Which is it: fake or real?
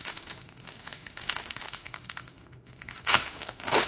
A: fake